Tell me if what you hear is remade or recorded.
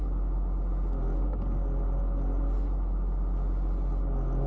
recorded